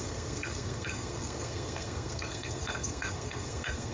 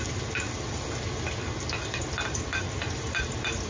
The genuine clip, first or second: second